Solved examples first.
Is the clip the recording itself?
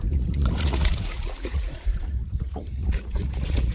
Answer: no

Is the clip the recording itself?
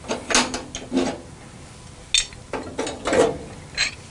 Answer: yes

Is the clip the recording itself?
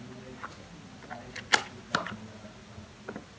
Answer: yes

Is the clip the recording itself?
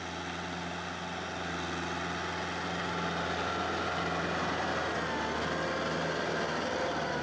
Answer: yes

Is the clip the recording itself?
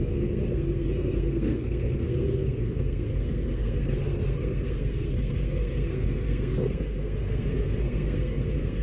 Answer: no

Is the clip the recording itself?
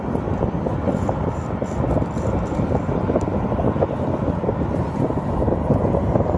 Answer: yes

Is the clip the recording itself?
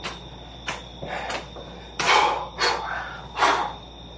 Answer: yes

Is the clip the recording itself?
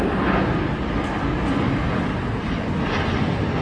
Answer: yes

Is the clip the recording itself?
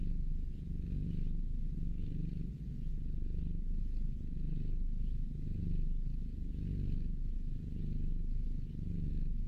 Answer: yes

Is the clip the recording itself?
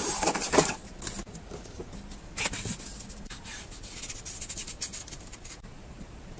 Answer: yes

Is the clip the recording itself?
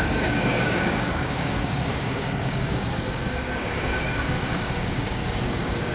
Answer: no